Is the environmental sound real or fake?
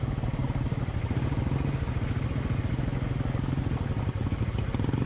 real